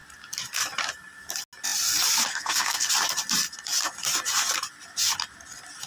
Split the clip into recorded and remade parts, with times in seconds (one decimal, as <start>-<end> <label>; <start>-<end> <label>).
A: 0.0-2.3 recorded; 2.3-2.9 remade; 2.9-5.9 recorded